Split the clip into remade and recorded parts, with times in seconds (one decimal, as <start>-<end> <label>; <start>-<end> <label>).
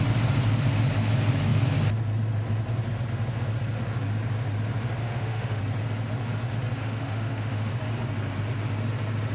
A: 0.0-5.0 recorded; 5.0-5.6 remade; 5.6-6.8 recorded; 6.8-7.7 remade; 7.7-9.3 recorded